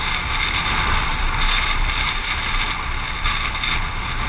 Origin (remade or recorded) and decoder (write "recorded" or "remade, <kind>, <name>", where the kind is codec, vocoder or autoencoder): recorded